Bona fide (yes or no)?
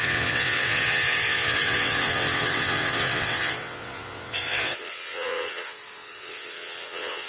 no